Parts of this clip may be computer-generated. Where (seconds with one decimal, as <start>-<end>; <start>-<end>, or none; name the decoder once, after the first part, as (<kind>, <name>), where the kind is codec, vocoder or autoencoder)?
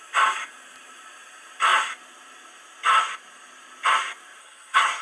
4.4-5.0 (codec, SNAC)